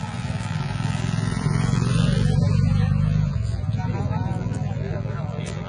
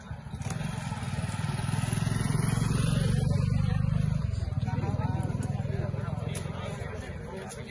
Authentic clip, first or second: second